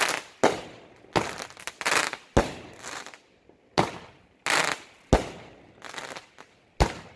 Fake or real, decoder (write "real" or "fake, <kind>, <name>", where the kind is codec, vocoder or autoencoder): real